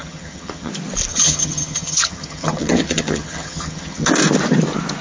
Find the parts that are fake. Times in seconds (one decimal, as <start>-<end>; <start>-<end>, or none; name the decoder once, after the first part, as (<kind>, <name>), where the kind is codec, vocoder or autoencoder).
0.0-0.7 (vocoder, HiFi-GAN); 1.1-4.1